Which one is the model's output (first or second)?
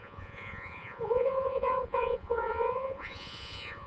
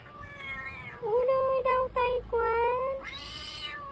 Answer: first